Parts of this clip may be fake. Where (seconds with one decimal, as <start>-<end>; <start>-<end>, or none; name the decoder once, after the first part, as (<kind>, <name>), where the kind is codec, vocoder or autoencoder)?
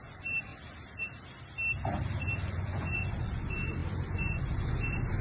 0.0-0.5 (vocoder, Vocos); 2.2-5.2